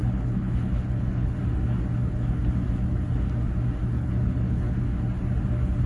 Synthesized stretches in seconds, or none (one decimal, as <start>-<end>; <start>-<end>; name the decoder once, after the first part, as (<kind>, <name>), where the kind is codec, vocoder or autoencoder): 0.0-1.4 (codec, HILCodec); 4.0-4.8